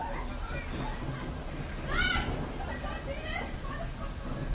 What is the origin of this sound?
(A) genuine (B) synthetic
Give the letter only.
A